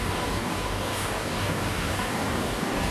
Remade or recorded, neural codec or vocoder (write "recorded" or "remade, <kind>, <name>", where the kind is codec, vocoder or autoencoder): remade, codec, DAC